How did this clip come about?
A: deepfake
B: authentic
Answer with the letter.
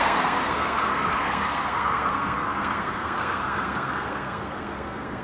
A